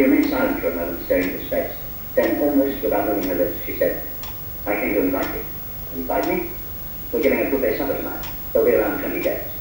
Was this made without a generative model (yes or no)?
yes